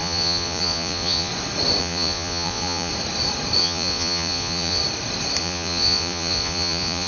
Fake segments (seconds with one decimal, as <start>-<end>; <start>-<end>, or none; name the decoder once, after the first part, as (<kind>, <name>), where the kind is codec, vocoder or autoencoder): 0.0-1.3 (vocoder, Vocos); 1.8-2.9; 3.6-4.8; 5.4-7.1